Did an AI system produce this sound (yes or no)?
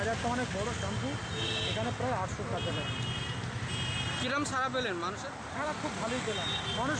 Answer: no